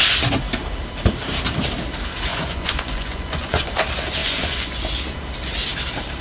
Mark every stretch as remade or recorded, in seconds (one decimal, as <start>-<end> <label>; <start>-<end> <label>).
0.0-2.3 recorded; 2.3-3.7 remade; 3.7-4.2 recorded; 4.2-4.8 remade; 4.8-6.2 recorded